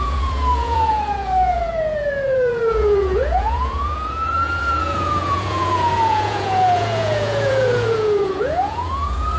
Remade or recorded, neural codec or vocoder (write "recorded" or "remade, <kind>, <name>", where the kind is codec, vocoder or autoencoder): remade, vocoder, Vocos